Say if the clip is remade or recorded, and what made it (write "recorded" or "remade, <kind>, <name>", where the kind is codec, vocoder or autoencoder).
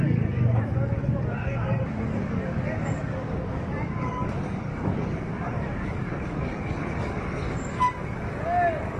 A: remade, codec, DAC